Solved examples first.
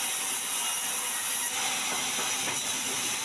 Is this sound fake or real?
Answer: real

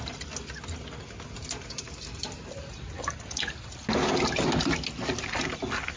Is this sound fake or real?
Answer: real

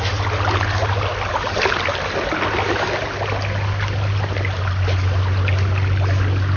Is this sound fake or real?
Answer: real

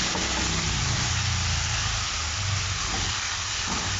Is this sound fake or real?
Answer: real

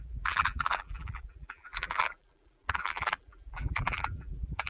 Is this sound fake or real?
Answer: fake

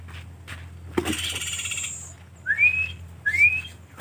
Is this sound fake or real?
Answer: real